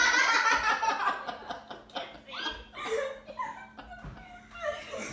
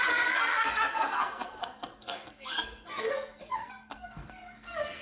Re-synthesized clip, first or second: second